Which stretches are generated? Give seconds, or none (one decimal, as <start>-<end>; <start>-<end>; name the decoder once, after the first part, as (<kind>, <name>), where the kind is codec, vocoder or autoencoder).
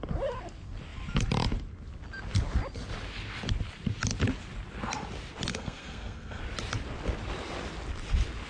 5.5-6.4 (codec, SNAC)